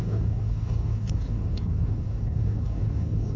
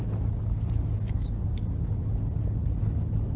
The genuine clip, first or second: second